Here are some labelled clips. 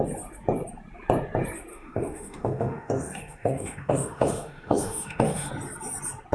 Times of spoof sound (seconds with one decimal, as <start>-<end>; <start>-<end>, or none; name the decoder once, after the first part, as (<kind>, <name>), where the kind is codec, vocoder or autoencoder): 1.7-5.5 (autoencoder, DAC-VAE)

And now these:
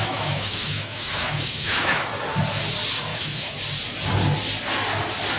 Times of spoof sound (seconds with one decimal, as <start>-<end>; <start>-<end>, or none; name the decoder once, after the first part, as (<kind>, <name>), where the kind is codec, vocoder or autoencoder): 0.0-2.1 (autoencoder, DAC-VAE); 3.1-3.6

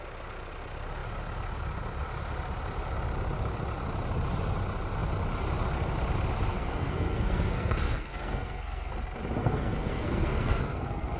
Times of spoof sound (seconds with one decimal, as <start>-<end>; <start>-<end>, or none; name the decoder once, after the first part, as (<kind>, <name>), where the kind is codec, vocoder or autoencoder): 6.5-8.9 (codec, SNAC); 9.4-11.2

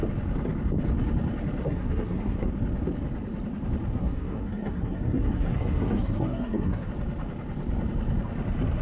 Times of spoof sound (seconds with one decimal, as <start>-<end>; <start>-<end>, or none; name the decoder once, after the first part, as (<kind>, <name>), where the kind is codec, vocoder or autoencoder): 1.6-2.5 (codec, SNAC); 3.9-6.9

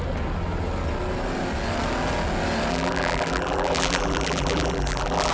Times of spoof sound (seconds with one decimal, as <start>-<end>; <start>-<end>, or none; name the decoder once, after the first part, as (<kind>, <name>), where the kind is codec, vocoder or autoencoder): 2.7-5.3 (vocoder, BigVGAN v2)

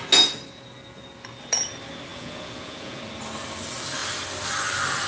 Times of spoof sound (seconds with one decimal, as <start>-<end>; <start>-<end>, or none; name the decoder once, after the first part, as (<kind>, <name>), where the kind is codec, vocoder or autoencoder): 2.1-3.0 (vocoder, Vocos)